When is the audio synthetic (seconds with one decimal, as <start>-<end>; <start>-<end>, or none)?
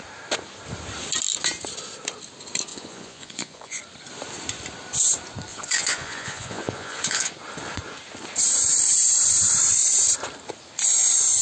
2.7-3.8; 5.5-7.3